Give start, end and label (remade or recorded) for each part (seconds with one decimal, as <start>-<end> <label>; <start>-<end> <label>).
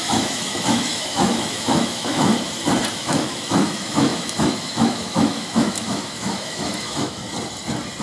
0.0-2.3 remade; 2.3-2.9 recorded; 2.9-7.2 remade; 7.2-8.0 recorded